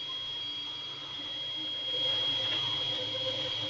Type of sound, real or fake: real